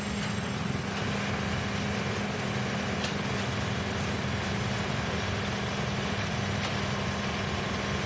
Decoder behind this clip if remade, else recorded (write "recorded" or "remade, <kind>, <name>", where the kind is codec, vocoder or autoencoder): recorded